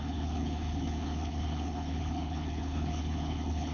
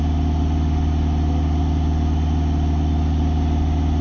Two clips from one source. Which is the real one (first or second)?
second